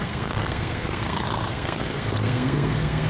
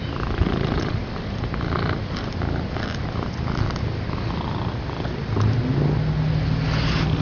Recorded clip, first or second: second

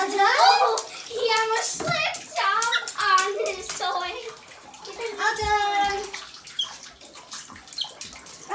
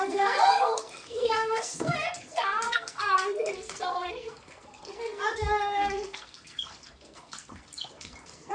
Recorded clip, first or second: first